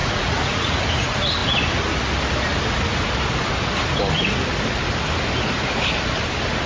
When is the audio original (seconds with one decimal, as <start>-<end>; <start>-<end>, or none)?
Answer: 0.8-6.7